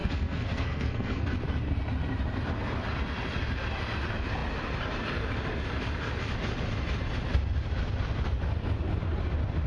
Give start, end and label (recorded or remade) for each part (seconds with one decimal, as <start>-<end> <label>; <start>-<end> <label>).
0.0-1.3 remade; 1.3-9.7 recorded